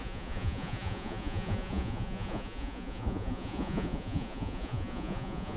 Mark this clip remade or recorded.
remade